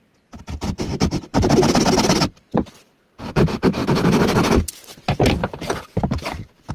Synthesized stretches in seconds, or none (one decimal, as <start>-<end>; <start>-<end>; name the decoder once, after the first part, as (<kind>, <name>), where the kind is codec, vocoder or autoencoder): 0.0-1.3 (vocoder, BigVGAN v2); 3.3-3.8